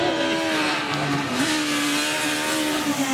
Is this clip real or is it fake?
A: real